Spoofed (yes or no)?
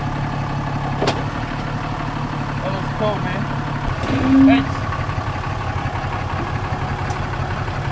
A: no